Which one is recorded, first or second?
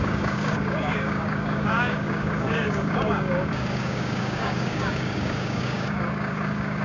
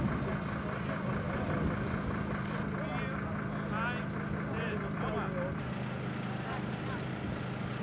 second